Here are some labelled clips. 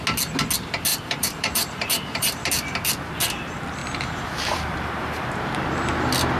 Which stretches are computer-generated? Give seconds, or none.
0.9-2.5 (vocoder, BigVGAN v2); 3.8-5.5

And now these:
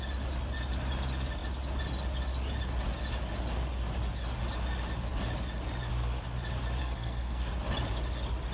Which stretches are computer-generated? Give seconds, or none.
6.8-7.5 (codec, SNAC)